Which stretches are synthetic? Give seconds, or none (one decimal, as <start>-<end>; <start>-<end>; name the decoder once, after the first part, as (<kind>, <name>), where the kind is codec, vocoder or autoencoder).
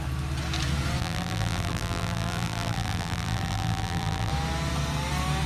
1.0-4.3 (vocoder, BigVGAN v2)